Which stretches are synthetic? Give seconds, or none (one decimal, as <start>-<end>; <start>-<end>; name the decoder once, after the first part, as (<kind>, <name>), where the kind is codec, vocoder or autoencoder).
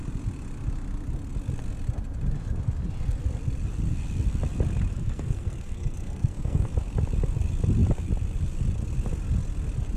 4.9-6.7 (codec, SNAC)